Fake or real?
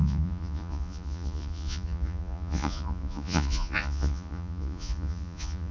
fake